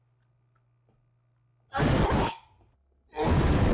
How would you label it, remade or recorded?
recorded